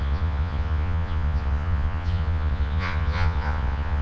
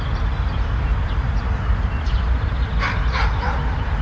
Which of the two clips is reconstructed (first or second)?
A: first